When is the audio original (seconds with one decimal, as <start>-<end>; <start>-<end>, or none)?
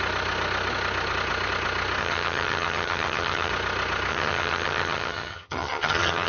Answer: 0.0-2.0; 3.5-4.1